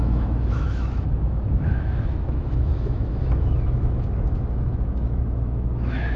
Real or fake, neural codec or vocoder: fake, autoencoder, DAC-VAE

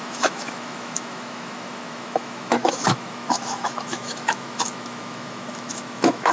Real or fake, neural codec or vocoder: fake, autoencoder, DAC-VAE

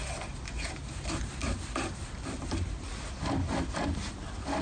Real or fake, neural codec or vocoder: real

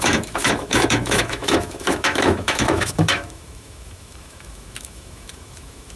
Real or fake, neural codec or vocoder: fake, autoencoder, DAC-VAE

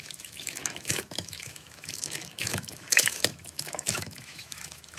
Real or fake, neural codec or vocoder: fake, autoencoder, DAC-VAE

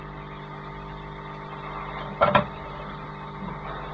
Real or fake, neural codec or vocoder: real